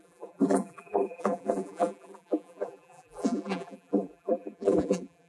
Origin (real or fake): fake